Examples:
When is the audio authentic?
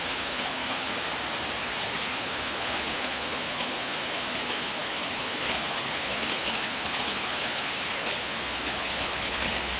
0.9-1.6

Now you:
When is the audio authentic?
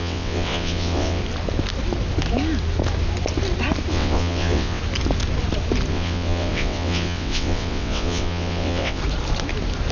1.2-3.9; 4.8-5.9; 9.0-9.9